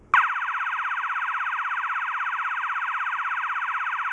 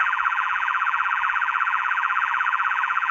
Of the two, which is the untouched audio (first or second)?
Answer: first